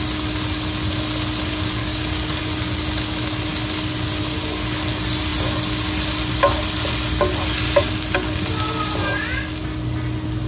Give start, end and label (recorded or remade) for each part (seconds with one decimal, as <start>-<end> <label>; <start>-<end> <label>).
0.0-1.8 recorded; 1.8-2.4 remade; 2.4-10.5 recorded